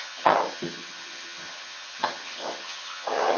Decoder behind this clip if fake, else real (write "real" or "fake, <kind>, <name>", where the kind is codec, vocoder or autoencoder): fake, vocoder, HiFi-GAN